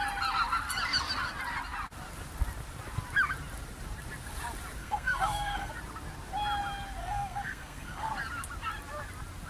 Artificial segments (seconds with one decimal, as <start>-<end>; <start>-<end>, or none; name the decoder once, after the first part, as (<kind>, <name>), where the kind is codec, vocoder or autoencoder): 4.8-5.7 (codec, SNAC); 7.0-8.1